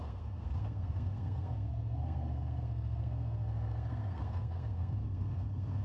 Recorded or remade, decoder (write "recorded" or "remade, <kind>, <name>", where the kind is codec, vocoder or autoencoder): remade, codec, SNAC